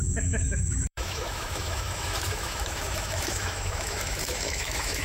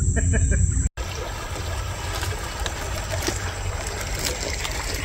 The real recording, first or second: second